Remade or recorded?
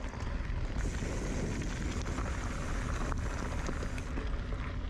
recorded